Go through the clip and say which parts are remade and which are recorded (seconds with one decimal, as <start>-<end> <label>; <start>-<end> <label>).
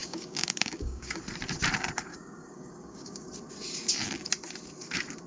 0.0-1.2 remade; 1.2-2.1 recorded; 2.1-3.3 remade; 3.3-5.3 recorded